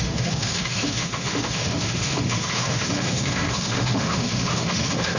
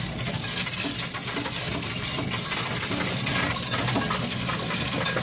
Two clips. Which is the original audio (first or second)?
second